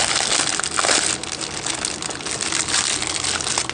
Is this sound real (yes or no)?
yes